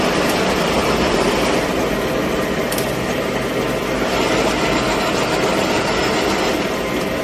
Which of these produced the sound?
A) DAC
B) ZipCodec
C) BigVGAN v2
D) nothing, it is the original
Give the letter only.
D